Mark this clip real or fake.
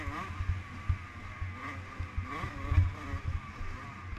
real